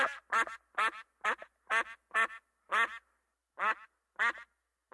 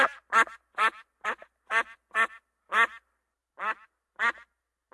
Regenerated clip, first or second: second